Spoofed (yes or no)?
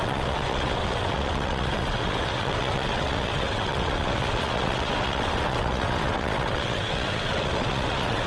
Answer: yes